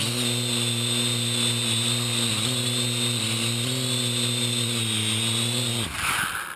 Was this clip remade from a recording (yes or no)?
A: no